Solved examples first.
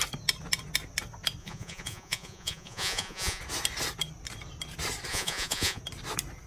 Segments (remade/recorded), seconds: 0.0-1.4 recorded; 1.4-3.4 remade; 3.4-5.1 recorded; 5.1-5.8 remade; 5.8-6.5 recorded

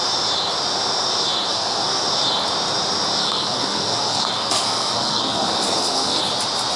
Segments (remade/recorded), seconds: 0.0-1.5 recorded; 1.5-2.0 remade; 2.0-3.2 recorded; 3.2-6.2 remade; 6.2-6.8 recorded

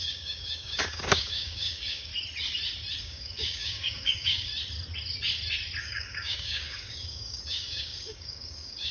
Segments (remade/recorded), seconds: 0.0-2.1 remade; 2.1-3.0 recorded; 3.0-4.5 remade; 4.5-5.8 recorded; 5.8-8.9 remade

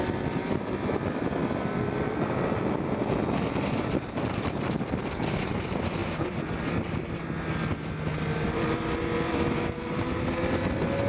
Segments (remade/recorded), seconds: 0.0-0.4 recorded; 0.4-5.2 remade; 5.2-6.0 recorded; 6.0-7.2 remade; 7.2-11.1 recorded

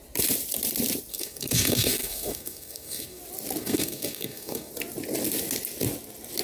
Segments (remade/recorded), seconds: 0.0-1.1 recorded; 1.1-3.2 remade; 3.2-3.6 recorded; 3.6-4.7 remade; 4.7-6.4 recorded

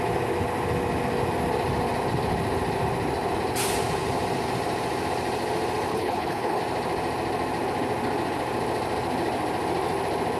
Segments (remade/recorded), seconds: 0.0-5.9 recorded; 5.9-6.6 remade; 6.6-10.4 recorded

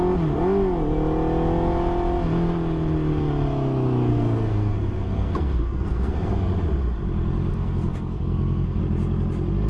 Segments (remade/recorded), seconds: 0.0-4.1 recorded; 4.1-6.3 remade; 6.3-7.5 recorded; 7.5-8.8 remade; 8.8-9.7 recorded

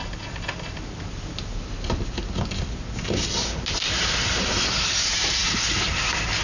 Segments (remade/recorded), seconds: 0.0-3.8 recorded; 3.8-6.4 remade